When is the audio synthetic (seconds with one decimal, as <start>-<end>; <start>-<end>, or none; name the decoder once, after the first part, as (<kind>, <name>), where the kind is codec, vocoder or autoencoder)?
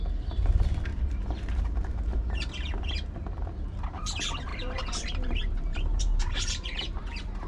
0.9-2.5 (vocoder, BigVGAN v2); 4.5-7.5